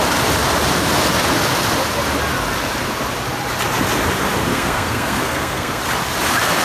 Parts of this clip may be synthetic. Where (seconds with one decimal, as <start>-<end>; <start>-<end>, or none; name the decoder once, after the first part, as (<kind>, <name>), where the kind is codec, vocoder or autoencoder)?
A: 4.5-5.8 (codec, SNAC)